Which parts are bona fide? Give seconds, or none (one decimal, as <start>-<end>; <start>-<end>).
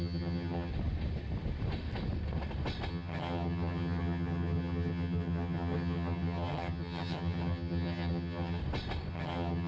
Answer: 0.7-2.9; 8.6-9.1